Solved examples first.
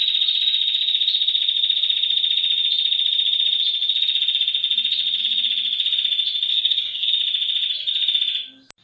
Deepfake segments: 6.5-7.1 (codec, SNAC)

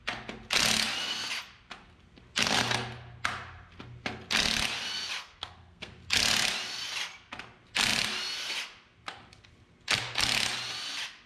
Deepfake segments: 5.2-5.9 (codec, SNAC)

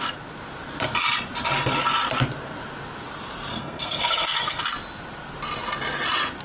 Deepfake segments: 3.5-4.6 (codec, SNAC)

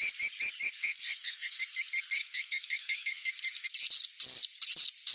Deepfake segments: 0.8-1.6 (codec, SNAC); 2.2-3.3

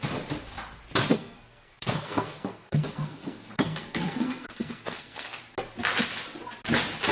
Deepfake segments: 1.1-5.4 (codec, SNAC)